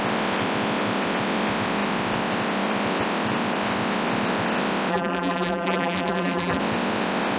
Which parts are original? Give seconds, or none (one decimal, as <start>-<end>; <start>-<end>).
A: 0.0-4.9; 6.6-7.4